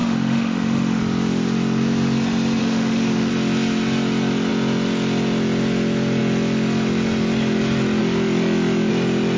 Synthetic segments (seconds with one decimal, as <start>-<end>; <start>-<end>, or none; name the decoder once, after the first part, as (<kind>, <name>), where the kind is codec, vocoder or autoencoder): 0.0-1.0 (autoencoder, DAC-VAE); 2.6-3.3; 8.0-8.9